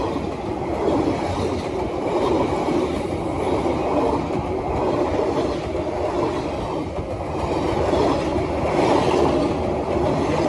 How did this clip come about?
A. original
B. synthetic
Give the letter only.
A